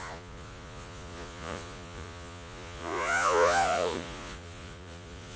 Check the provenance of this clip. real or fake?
fake